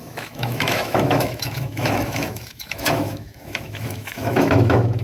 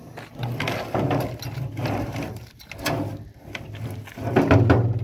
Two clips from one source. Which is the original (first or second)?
second